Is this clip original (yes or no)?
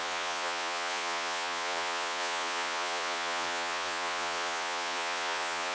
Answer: no